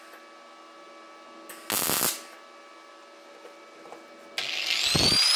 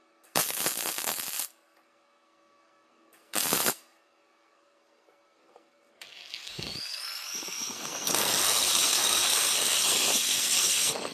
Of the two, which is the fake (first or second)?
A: second